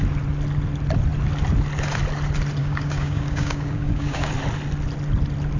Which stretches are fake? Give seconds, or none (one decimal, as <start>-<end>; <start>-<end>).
2.6-4.3